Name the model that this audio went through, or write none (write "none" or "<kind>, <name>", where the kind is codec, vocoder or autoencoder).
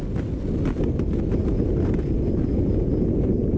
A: none